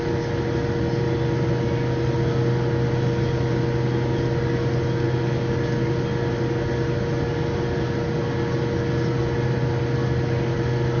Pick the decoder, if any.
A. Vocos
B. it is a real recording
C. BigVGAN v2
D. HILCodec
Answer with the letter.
B